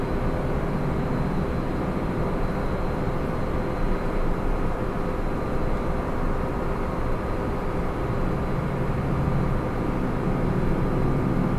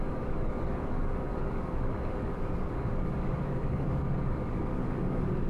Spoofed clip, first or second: second